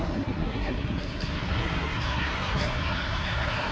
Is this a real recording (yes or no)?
no